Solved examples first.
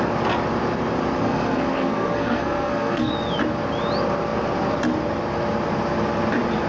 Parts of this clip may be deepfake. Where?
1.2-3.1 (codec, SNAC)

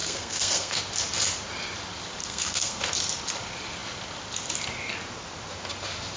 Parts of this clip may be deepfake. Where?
0.0-0.8 (codec, SNAC); 2.2-2.8

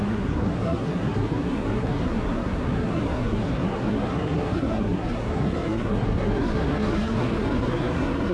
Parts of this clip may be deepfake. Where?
0.0-8.3 (codec, SNAC)

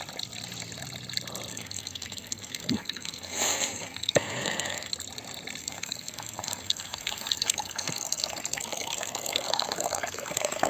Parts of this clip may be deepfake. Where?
1.5-4.9 (codec, SNAC); 5.6-10.7

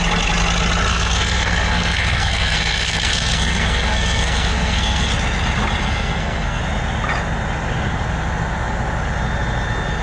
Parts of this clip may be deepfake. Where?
0.9-5.1 (codec, SNAC); 5.8-6.6